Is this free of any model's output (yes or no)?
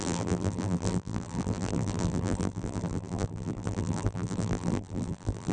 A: no